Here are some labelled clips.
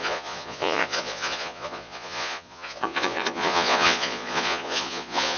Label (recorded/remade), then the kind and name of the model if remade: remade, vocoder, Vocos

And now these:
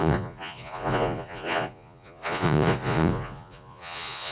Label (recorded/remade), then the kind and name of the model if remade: remade, vocoder, Vocos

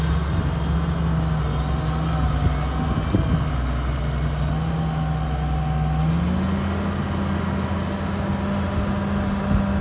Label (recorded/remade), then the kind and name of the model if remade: recorded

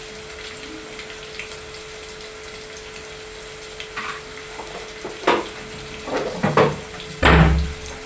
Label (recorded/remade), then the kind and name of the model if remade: recorded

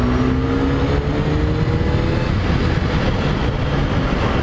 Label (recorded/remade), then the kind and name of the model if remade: recorded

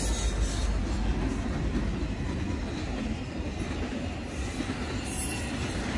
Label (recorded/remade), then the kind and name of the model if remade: recorded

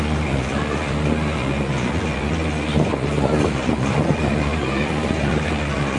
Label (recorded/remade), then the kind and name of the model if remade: remade, vocoder, Vocos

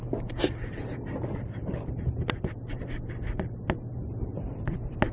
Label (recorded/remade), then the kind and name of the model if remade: recorded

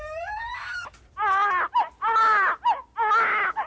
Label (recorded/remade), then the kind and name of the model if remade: recorded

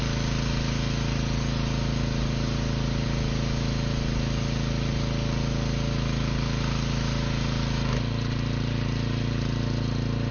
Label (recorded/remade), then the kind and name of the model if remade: recorded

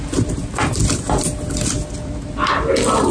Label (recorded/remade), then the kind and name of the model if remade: recorded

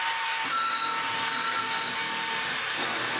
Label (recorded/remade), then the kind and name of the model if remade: recorded